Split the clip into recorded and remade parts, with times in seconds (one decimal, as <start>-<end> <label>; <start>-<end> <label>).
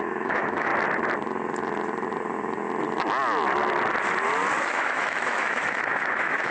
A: 0.0-0.7 remade; 0.7-4.6 recorded; 4.6-6.5 remade